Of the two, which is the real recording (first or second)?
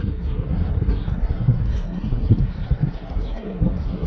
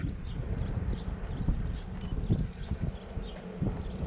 second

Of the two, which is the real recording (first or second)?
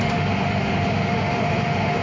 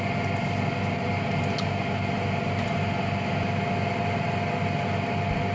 second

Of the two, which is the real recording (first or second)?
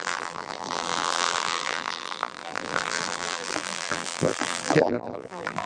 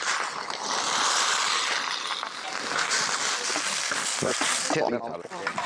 second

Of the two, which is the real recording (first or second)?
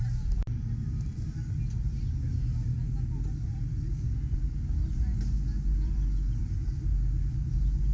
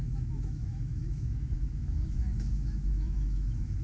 first